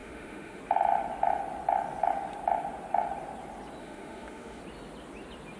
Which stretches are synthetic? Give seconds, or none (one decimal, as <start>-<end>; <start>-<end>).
0.0-0.6; 3.8-4.6